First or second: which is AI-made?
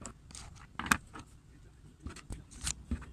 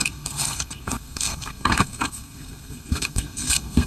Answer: second